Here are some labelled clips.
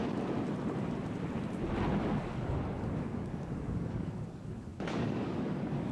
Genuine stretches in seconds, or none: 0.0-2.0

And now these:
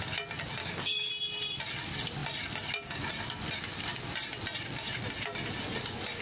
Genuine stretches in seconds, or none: 0.0-0.6; 1.1-6.2

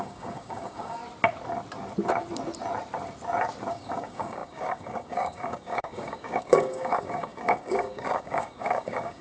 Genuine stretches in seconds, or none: 1.0-3.7

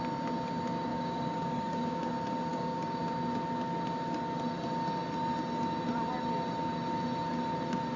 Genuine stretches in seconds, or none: 0.0-0.9; 2.1-2.5; 3.0-8.0

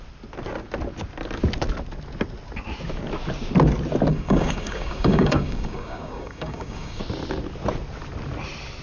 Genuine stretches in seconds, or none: 0.0-4.1; 7.0-8.8

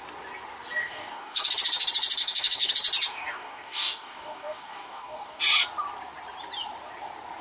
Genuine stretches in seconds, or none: 0.0-0.8; 1.5-2.2; 2.7-3.1; 5.4-7.4

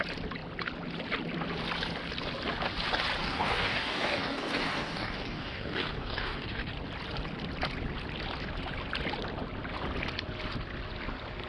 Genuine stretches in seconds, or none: 0.0-3.2; 6.7-11.5